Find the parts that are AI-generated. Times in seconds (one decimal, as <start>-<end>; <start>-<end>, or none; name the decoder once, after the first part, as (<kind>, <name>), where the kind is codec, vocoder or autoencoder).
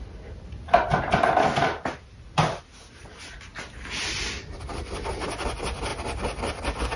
none